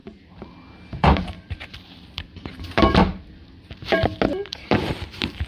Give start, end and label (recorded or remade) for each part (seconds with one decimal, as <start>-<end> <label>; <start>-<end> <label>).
0.0-3.1 remade; 3.1-4.5 recorded; 4.5-5.5 remade